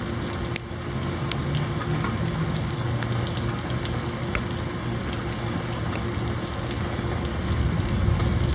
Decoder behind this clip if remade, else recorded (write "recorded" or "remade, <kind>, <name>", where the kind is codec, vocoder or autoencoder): recorded